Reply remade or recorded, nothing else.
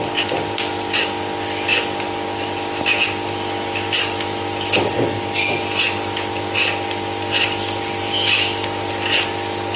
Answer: recorded